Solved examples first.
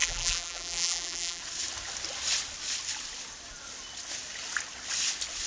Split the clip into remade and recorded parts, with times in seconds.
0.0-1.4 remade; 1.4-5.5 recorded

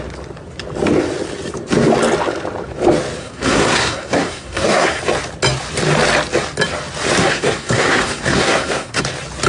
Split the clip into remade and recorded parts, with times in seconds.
0.0-3.2 recorded; 3.2-5.0 remade; 5.0-7.2 recorded; 7.2-9.0 remade; 9.0-9.5 recorded

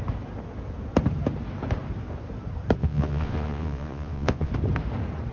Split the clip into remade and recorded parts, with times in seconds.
0.0-2.8 recorded; 2.8-4.5 remade; 4.5-5.3 recorded

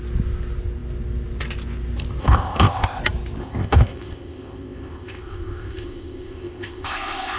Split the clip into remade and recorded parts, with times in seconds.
0.0-2.2 recorded; 2.2-3.0 remade; 3.0-3.4 recorded; 3.4-7.4 remade